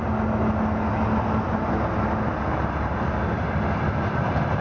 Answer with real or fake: real